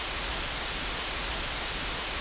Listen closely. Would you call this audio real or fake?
real